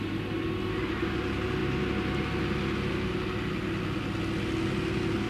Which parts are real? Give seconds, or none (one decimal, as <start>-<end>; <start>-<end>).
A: 0.0-5.3